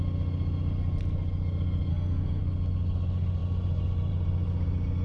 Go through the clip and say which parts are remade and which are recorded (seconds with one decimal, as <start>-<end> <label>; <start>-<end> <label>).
0.0-1.9 recorded; 1.9-2.4 remade; 2.4-5.0 recorded